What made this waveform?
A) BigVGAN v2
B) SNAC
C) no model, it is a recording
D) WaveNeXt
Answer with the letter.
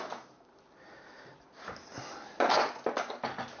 C